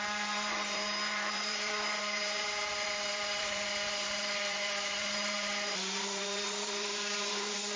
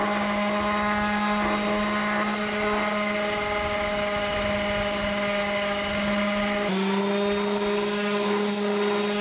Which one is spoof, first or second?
first